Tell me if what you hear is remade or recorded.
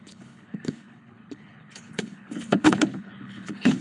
remade